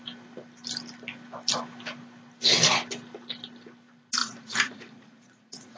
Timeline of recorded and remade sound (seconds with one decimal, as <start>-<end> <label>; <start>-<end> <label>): 0.0-4.2 recorded; 4.2-5.8 remade